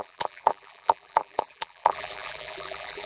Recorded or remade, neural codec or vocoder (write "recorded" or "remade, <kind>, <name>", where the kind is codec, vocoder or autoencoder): remade, vocoder, BigVGAN v2